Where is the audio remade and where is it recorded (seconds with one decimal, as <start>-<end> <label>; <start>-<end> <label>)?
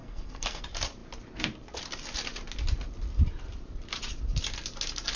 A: 0.0-0.6 remade; 0.6-5.2 recorded